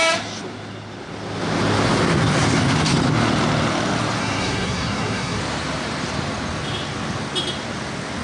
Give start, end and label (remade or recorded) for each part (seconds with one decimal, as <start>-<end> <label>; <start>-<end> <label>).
0.0-4.2 recorded; 4.2-5.4 remade; 5.4-8.2 recorded